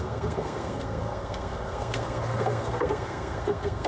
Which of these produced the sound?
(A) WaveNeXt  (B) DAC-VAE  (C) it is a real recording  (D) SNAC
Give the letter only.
D